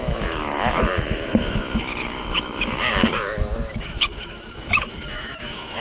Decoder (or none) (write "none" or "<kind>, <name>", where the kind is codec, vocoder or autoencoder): autoencoder, DAC-VAE